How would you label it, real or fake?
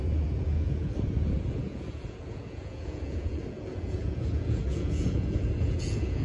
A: fake